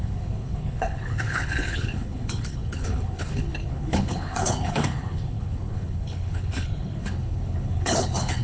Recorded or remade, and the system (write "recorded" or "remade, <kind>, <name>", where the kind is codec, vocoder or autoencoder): remade, codec, HILCodec